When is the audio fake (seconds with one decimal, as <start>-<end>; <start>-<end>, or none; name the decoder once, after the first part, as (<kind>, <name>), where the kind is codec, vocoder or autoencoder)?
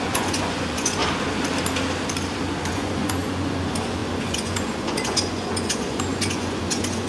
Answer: 0.0-1.0 (vocoder, Vocos); 2.7-7.1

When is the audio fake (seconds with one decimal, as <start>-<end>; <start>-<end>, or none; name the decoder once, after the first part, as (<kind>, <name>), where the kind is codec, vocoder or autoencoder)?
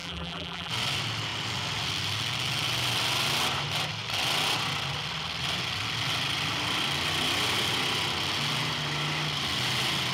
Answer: 0.0-0.7 (vocoder, BigVGAN v2)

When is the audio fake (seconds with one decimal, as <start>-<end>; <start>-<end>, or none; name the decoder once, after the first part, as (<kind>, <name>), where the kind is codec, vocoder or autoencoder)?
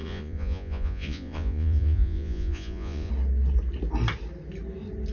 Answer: 0.0-3.1 (vocoder, Vocos)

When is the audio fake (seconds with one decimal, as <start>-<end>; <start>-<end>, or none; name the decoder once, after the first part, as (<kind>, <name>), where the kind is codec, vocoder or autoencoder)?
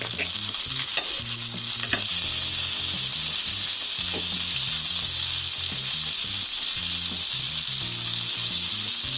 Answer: none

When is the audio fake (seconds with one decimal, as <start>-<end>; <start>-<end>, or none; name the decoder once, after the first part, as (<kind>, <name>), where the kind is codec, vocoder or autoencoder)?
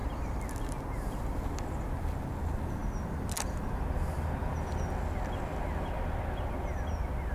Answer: none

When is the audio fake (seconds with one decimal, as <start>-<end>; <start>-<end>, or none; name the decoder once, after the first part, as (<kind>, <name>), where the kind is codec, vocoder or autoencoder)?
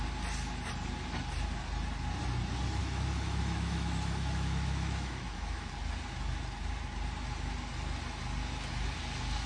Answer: 2.8-5.7 (autoencoder, DAC-VAE)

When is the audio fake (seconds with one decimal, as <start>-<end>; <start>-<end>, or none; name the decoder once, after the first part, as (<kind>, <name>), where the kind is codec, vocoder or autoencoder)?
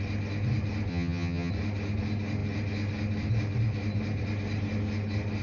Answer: 0.9-1.5 (vocoder, HiFi-GAN)